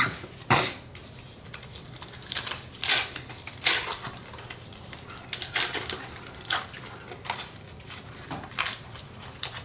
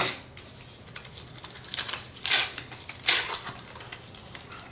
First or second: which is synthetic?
first